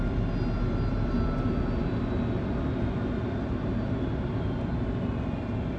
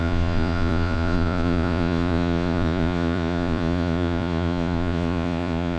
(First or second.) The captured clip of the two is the first